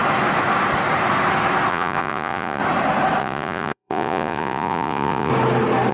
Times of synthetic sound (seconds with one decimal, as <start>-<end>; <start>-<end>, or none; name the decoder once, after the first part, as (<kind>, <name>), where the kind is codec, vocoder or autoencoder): 1.7-2.6 (vocoder, Vocos); 3.2-5.3